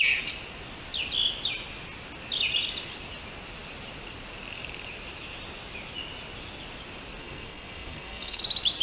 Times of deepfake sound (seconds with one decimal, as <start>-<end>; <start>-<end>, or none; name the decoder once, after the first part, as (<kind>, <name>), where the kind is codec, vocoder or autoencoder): 7.2-8.4 (codec, SNAC)